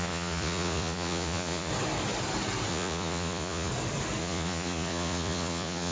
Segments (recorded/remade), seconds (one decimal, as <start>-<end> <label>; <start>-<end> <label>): 0.0-1.7 remade; 1.7-2.7 recorded; 2.7-3.7 remade; 3.7-4.2 recorded; 4.2-5.9 remade